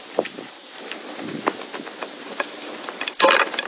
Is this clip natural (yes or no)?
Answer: yes